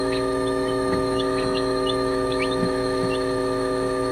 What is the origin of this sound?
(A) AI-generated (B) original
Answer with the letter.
A